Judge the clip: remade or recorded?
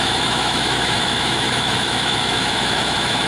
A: remade